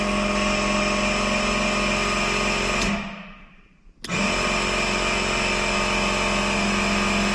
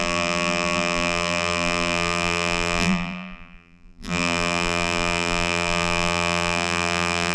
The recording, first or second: first